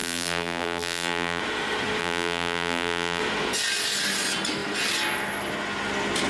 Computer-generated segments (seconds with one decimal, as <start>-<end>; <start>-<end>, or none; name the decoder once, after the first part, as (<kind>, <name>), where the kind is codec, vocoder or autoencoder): 0.0-1.4 (vocoder, BigVGAN v2); 2.0-3.2